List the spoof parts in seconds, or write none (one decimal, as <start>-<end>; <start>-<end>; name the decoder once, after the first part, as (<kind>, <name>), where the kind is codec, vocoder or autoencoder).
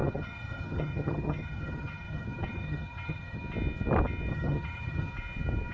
0.0-3.4 (vocoder, HiFi-GAN); 4.3-5.1